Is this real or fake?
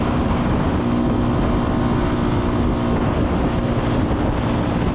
real